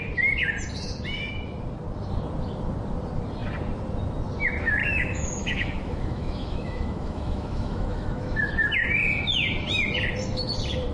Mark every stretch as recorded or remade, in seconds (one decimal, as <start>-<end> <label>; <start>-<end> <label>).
0.0-4.8 recorded; 4.8-8.5 remade; 8.5-10.9 recorded